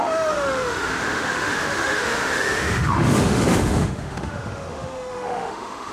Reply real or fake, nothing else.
fake